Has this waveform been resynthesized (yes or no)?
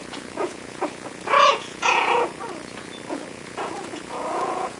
yes